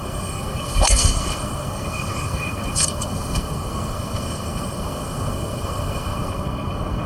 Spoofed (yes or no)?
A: yes